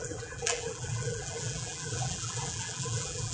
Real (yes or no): no